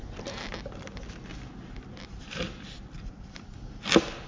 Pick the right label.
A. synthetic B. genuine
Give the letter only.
B